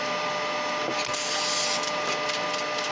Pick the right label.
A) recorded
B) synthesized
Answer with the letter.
A